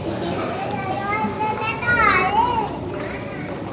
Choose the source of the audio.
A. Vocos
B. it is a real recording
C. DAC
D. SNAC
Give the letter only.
B